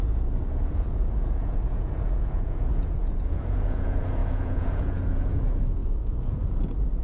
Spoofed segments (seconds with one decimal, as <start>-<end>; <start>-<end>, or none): 0.0-7.0